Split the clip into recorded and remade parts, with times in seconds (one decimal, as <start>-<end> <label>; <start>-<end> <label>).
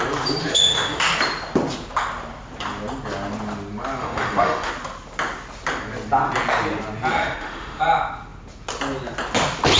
0.0-0.4 recorded; 0.4-1.0 remade; 1.0-4.0 recorded; 4.0-4.7 remade; 4.7-7.1 recorded; 7.1-7.8 remade; 7.8-9.8 recorded